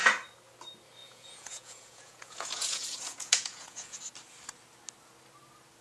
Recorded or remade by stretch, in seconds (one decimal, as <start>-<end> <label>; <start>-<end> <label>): 0.0-1.0 recorded; 1.0-4.0 remade; 4.0-5.8 recorded